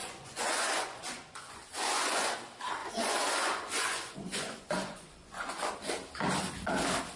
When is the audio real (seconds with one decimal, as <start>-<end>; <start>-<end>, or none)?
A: 2.3-2.8; 5.7-7.2